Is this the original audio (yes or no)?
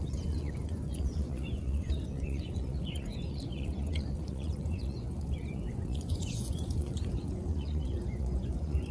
no